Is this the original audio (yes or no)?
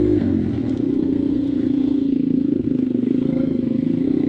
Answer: no